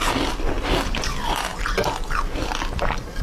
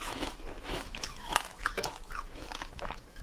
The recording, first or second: first